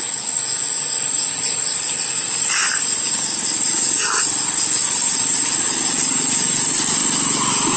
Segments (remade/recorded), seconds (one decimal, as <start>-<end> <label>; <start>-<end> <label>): 0.0-2.6 recorded; 2.6-3.8 remade; 3.8-4.8 recorded; 4.8-5.5 remade; 5.5-7.8 recorded